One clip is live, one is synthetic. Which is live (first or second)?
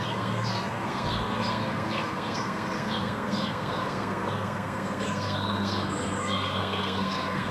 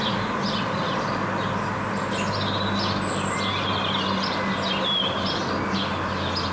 second